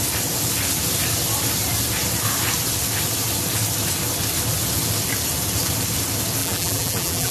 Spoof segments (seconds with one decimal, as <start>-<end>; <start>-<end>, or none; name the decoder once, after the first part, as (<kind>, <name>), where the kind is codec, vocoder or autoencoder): 6.4-7.3 (vocoder, BigVGAN v2)